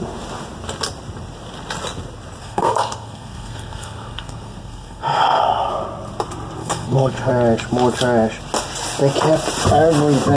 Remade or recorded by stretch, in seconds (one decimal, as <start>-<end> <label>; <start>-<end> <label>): 0.0-2.4 recorded; 2.4-5.7 remade; 5.7-6.6 recorded; 6.6-7.3 remade; 7.3-10.4 recorded